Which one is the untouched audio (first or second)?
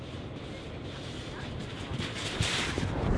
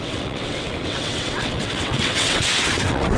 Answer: first